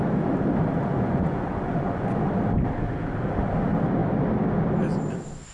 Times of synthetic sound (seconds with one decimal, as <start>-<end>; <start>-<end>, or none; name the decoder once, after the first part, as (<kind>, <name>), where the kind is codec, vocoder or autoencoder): 0.8-2.3 (vocoder, Vocos)